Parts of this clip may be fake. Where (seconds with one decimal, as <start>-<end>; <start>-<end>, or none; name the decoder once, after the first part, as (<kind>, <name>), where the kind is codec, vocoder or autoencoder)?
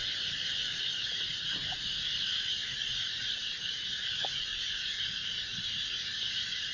0.0-4.0 (vocoder, BigVGAN v2); 4.7-6.7